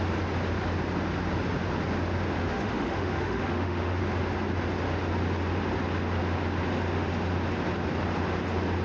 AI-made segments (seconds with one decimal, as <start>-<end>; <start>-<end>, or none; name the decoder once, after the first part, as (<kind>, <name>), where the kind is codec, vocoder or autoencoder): 2.4-4.0 (autoencoder, DAC-VAE)